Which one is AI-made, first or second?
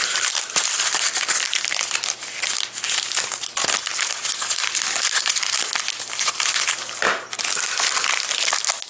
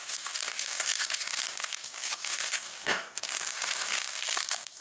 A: second